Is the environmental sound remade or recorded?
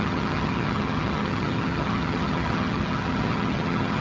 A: remade